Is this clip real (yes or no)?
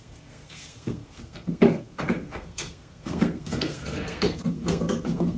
no